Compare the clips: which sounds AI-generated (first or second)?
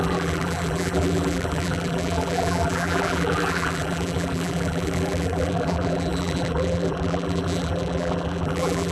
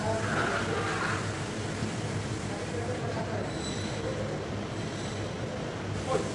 first